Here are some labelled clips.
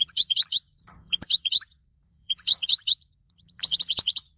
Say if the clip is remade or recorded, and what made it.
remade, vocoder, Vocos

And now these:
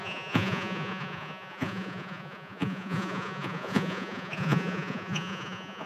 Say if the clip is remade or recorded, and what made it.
remade, vocoder, Vocos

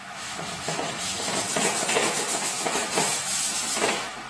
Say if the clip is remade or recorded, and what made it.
remade, autoencoder, DAC-VAE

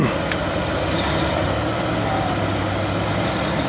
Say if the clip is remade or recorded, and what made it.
recorded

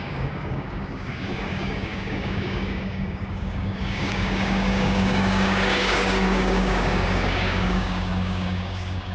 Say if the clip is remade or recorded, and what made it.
remade, codec, DAC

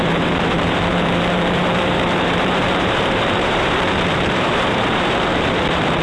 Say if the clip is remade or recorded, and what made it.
remade, vocoder, BigVGAN v2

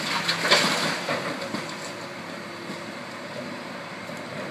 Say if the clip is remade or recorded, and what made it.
recorded